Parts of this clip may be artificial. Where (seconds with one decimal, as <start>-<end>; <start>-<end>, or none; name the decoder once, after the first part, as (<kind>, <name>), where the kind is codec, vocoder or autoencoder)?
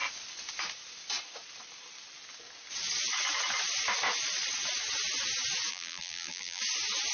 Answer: 5.7-6.6 (vocoder, BigVGAN v2)